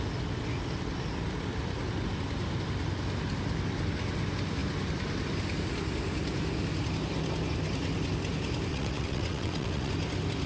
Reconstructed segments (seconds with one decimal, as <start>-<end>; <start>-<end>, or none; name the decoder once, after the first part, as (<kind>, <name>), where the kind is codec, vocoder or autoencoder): 8.7-9.9 (vocoder, WaveNeXt)